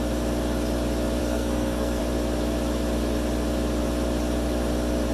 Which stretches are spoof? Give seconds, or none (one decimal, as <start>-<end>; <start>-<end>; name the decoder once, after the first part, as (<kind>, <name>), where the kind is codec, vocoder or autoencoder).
1.2-2.0 (codec, SNAC)